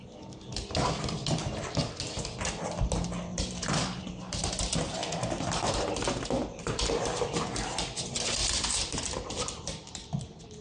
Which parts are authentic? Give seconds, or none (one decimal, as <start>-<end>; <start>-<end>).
0.0-3.3; 4.5-8.4; 9.4-10.6